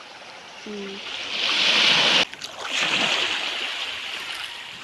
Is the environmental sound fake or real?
real